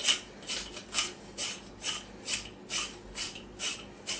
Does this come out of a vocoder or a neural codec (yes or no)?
no